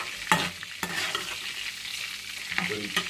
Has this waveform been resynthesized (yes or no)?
no